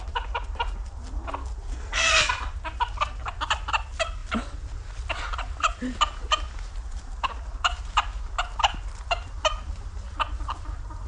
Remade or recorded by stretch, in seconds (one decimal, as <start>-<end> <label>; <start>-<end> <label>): 0.0-1.7 recorded; 1.7-2.3 remade; 2.3-11.1 recorded